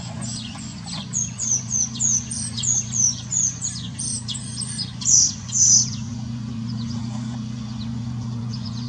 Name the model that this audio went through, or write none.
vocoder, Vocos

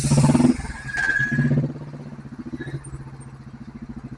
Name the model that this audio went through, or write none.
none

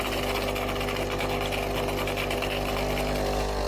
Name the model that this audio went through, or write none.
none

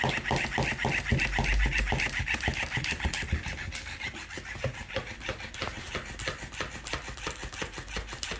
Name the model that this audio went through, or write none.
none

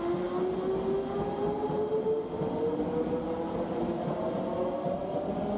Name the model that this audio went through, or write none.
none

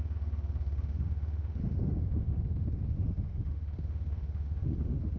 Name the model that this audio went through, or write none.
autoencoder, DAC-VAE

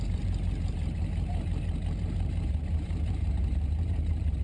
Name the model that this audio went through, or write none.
vocoder, BigVGAN v2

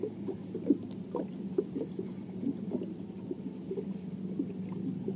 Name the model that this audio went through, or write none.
none